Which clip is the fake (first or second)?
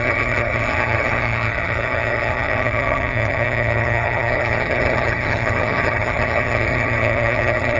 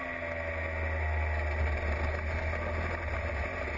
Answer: first